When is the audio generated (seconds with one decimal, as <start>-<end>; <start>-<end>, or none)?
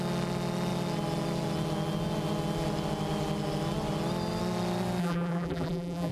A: 5.0-6.1